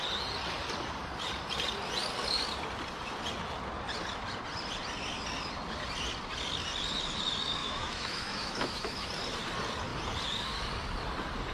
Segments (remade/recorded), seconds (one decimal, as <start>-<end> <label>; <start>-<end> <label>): 0.0-7.6 recorded; 7.6-9.1 remade; 9.1-11.5 recorded